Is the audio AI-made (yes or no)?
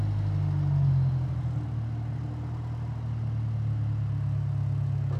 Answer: no